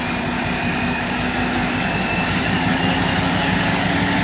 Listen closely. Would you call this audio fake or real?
fake